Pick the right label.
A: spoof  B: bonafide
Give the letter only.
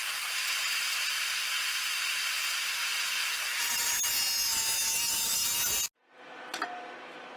B